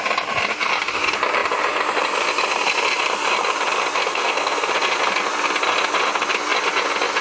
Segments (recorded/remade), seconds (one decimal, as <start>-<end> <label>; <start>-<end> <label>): 0.0-4.1 recorded; 4.1-4.7 remade; 4.7-7.2 recorded